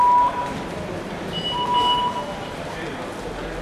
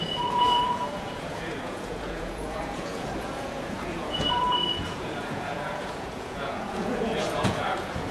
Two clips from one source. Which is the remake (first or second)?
second